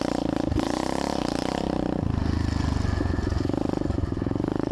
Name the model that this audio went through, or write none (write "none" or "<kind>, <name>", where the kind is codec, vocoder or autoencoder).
none